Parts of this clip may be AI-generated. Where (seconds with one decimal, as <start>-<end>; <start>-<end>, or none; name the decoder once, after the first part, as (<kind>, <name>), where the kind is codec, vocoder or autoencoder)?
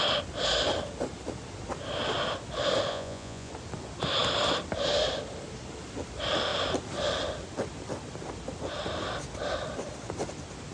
2.9-3.5 (vocoder, Vocos)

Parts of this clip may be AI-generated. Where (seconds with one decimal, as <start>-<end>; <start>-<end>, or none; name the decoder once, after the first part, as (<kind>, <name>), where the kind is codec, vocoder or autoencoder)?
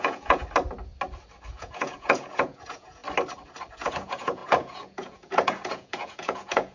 0.0-0.4 (vocoder, Vocos); 1.5-3.0; 3.7-6.7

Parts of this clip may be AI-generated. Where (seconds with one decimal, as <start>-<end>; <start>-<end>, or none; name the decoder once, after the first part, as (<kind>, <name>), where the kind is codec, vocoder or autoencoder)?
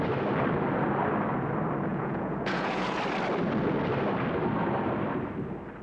1.9-3.0 (vocoder, Vocos)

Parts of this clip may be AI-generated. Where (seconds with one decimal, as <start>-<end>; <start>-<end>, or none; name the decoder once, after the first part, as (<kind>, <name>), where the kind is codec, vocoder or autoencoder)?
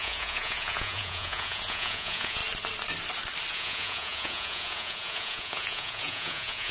0.0-2.4 (vocoder, Vocos); 3.5-6.7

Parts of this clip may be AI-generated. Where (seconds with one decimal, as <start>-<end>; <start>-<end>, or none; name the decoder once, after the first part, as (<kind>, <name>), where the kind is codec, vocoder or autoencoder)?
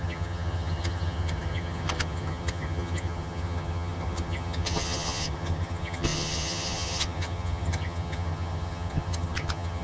0.0-9.8 (vocoder, HiFi-GAN)